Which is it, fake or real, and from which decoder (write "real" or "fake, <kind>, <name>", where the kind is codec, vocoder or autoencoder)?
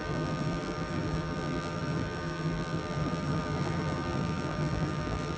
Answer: fake, vocoder, BigVGAN v2